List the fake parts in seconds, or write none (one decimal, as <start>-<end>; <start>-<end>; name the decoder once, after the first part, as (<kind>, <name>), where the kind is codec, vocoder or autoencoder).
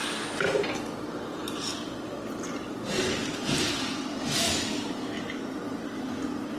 4.1-5.2 (autoencoder, DAC-VAE)